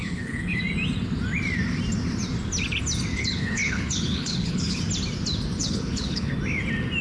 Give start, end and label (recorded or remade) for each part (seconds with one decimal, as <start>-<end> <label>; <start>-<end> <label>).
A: 0.0-0.6 remade; 0.6-3.1 recorded; 3.1-4.8 remade; 4.8-5.6 recorded; 5.6-6.3 remade; 6.3-7.0 recorded